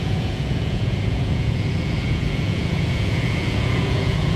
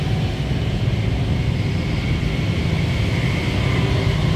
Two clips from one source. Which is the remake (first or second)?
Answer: first